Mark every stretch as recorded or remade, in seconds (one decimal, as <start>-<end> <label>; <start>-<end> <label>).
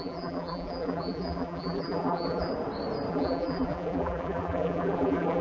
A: 0.0-2.5 remade; 2.5-3.1 recorded; 3.1-5.4 remade